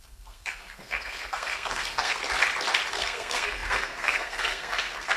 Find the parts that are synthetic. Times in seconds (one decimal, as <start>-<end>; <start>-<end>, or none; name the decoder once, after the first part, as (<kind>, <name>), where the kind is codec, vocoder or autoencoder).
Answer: 0.0-2.2 (codec, SNAC); 2.9-5.2